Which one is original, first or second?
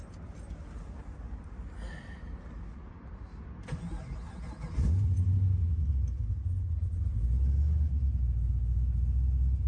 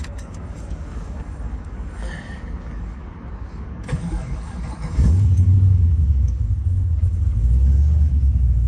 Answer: first